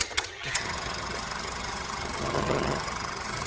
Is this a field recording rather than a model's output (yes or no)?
no